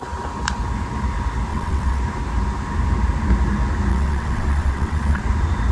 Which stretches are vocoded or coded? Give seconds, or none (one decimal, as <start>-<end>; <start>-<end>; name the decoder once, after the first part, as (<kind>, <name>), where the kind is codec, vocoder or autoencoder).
1.5-2.0 (vocoder, WaveNeXt); 3.9-5.2

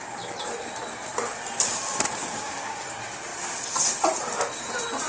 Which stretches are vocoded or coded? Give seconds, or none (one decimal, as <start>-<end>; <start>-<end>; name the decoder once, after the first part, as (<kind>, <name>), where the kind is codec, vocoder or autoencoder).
2.2-2.9 (codec, DAC)

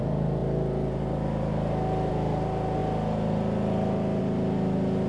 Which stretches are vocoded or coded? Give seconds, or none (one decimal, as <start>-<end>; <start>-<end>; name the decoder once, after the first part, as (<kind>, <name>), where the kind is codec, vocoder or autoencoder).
none

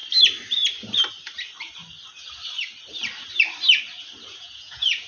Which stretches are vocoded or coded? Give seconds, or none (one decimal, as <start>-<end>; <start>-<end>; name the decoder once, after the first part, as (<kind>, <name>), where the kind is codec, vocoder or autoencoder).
4.3-5.1 (vocoder, Vocos)

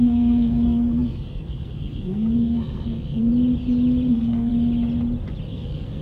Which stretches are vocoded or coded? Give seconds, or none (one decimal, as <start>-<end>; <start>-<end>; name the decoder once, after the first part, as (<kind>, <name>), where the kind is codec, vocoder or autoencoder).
0.0-3.3 (codec, SNAC); 4.1-4.5; 5.5-6.0

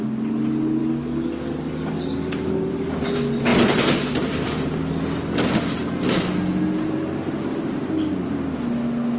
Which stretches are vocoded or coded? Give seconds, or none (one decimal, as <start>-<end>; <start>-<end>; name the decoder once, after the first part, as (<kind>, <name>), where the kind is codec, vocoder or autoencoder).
0.8-2.9 (codec, DAC)

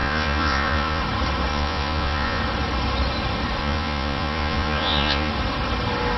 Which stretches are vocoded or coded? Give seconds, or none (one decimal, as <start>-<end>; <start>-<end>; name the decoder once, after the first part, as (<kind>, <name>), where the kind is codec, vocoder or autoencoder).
0.0-1.0 (vocoder, Vocos); 1.5-2.4; 3.6-5.3

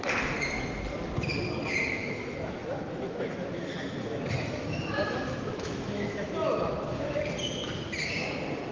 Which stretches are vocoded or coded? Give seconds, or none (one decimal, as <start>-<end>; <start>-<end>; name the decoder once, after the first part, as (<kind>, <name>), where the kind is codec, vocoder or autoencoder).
2.0-7.2 (autoencoder, DAC-VAE)